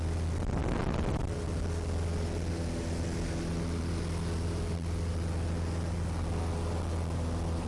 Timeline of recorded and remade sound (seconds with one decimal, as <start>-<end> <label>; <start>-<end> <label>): 0.0-7.7 recorded